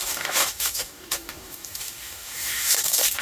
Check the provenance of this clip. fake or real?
fake